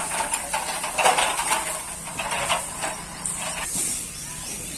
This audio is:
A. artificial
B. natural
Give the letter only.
B